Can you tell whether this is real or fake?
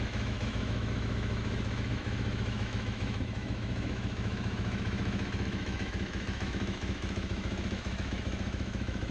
fake